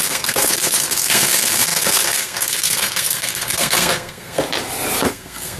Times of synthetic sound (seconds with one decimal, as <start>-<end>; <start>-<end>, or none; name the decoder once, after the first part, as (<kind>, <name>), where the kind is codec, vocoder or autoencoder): 0.0-4.4 (codec, SNAC); 5.1-5.6